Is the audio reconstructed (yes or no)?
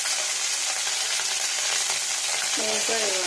no